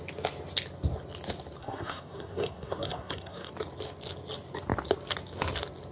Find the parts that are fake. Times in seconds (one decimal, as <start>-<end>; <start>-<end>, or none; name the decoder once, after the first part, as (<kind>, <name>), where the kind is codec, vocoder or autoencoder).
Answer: 1.6-3.5 (codec, SNAC)